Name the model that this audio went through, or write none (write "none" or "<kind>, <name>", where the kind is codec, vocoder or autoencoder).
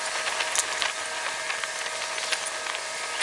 none